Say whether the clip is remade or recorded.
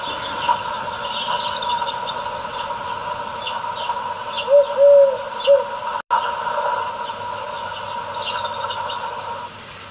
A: recorded